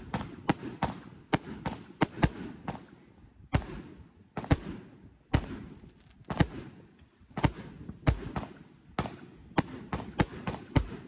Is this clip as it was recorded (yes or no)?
yes